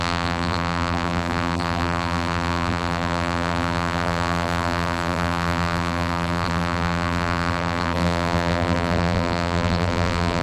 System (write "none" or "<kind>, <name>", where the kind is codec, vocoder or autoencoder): vocoder, BigVGAN v2